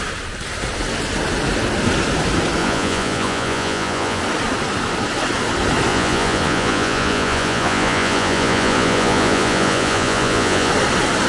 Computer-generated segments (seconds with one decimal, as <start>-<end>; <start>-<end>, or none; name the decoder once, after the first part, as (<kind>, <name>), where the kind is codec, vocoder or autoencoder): 2.6-4.2 (vocoder, Vocos); 5.9-10.7